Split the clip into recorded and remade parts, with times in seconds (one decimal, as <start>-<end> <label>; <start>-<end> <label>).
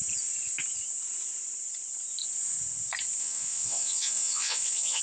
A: 0.0-3.2 recorded; 3.2-5.0 remade